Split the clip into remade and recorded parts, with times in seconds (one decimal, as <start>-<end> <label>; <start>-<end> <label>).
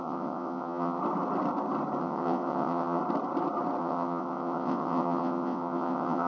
0.0-1.0 remade; 1.0-2.0 recorded; 2.0-3.0 remade; 3.0-3.8 recorded; 3.8-6.3 remade